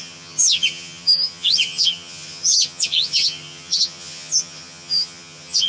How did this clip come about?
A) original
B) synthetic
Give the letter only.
B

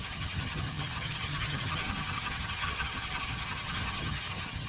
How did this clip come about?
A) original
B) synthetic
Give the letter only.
B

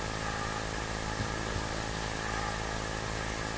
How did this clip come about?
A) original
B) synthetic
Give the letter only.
A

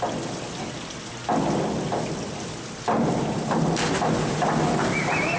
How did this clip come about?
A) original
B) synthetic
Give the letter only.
A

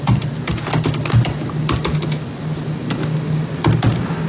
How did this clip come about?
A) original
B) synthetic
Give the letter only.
A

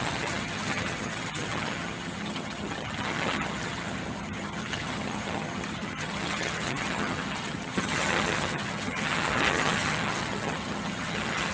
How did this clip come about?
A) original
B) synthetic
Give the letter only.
B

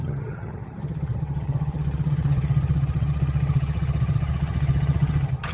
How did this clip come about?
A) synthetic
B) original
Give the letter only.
A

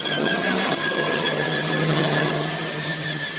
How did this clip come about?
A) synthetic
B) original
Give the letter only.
A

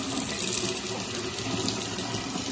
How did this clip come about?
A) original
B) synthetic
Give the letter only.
A